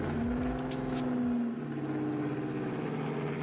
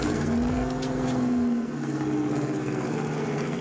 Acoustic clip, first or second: first